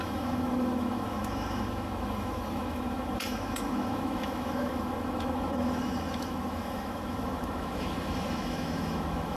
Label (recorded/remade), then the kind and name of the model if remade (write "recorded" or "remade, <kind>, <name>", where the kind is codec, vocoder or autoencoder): remade, autoencoder, DAC-VAE